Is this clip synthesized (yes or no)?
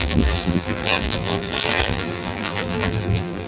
yes